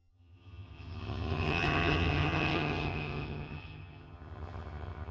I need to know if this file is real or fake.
fake